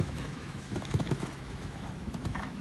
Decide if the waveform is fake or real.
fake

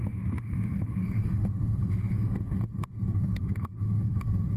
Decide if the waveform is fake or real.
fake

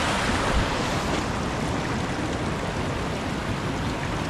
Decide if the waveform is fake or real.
real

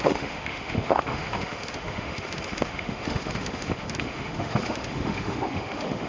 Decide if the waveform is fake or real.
fake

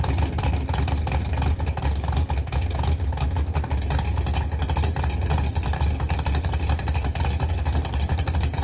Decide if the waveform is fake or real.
real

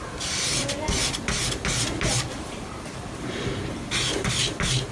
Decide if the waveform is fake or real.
real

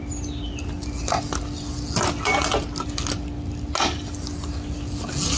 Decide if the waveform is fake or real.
real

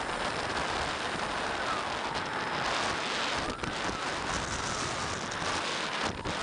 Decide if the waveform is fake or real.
real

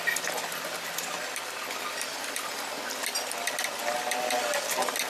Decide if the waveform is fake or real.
real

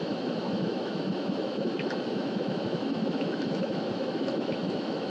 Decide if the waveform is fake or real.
fake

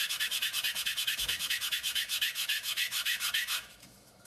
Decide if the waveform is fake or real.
fake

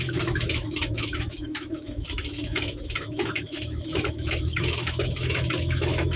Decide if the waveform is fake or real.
fake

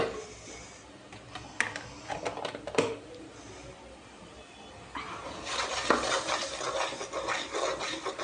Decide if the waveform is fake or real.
real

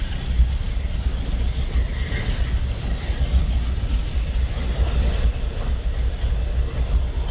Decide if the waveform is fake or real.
real